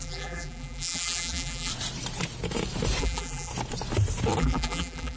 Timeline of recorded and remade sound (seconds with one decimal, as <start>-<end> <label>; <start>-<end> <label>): 0.0-1.7 remade; 1.7-3.0 recorded; 3.0-3.5 remade; 3.5-4.4 recorded; 4.4-5.2 remade

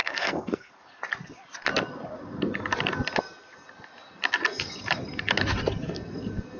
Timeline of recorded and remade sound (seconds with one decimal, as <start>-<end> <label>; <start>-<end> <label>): 0.0-0.7 remade; 0.7-6.6 recorded

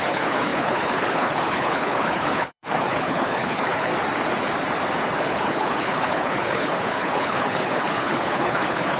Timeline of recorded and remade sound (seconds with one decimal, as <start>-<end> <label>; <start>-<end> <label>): 0.0-3.9 remade; 3.9-5.2 recorded; 5.2-9.0 remade

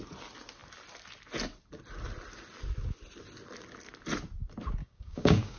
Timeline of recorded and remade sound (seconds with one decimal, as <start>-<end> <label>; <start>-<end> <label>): 0.0-4.8 recorded; 4.8-5.6 remade